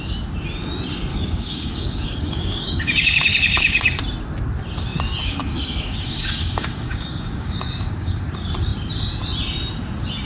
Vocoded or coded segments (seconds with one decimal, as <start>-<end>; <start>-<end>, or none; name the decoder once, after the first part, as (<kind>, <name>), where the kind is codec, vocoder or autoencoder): 1.1-4.0 (codec, DAC); 4.9-8.2